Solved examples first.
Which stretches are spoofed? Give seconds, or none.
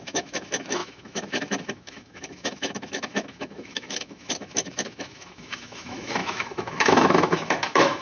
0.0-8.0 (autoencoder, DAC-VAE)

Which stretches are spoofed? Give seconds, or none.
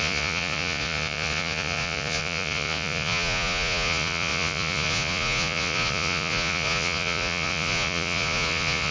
0.0-8.9 (vocoder, Vocos)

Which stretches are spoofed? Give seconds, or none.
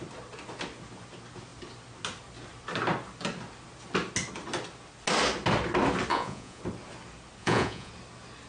6.1-6.6 (vocoder, Vocos); 7.4-7.9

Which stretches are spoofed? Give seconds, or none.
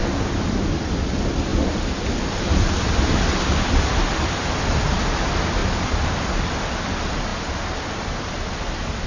1.5-4.3 (vocoder, BigVGAN v2); 5.6-6.1